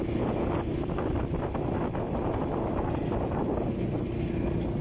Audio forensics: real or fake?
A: real